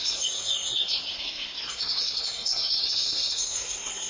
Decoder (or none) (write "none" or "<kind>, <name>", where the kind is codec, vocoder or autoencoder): codec, SNAC